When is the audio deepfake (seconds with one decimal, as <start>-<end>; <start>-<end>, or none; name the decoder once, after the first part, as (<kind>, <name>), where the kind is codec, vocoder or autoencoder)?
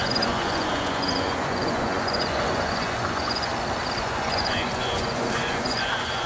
0.0-3.5 (vocoder, Vocos); 4.0-6.3